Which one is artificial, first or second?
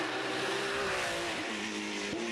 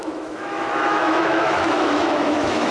second